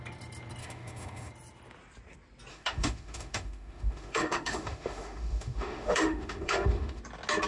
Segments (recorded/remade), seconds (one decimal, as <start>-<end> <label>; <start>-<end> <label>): 0.0-0.6 recorded; 0.6-1.3 remade; 1.3-2.5 recorded; 2.5-7.0 remade; 7.0-7.5 recorded